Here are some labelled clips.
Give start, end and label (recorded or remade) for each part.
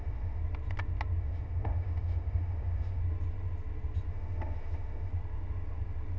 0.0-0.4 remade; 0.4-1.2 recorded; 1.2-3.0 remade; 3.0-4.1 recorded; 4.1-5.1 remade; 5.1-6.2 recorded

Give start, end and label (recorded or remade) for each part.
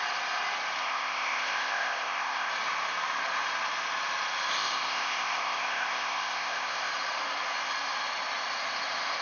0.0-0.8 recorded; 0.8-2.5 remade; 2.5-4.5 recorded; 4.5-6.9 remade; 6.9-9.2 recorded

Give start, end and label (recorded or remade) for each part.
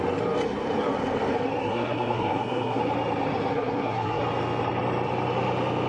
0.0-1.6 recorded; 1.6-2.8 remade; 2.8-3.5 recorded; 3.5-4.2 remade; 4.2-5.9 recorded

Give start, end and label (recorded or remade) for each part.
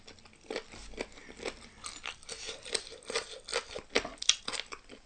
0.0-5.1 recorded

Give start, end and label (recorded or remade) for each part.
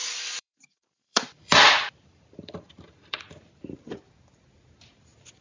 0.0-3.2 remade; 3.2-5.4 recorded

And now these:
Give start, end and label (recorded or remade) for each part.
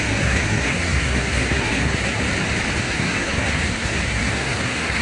0.0-2.2 remade; 2.2-2.8 recorded; 2.8-5.0 remade